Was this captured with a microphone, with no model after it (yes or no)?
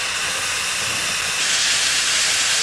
yes